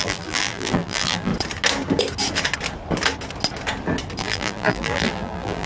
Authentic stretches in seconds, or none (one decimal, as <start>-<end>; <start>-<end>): 1.3-4.2